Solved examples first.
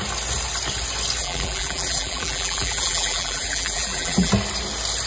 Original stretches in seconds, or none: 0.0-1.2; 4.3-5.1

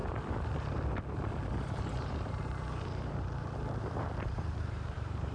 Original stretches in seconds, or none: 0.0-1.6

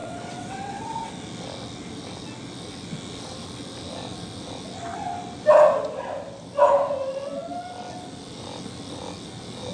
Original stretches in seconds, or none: 1.1-9.7

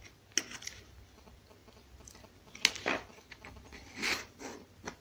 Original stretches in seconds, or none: 0.0-5.0